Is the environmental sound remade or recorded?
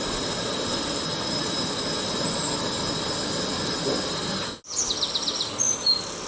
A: recorded